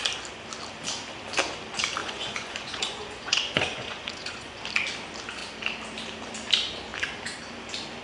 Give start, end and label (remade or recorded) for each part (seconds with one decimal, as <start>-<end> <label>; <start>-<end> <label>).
0.0-2.0 recorded; 2.0-4.6 remade; 4.6-8.0 recorded